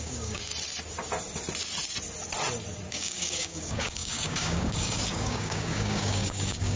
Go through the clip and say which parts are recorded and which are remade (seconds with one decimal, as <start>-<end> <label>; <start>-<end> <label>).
0.0-0.5 remade; 0.5-2.9 recorded; 2.9-6.8 remade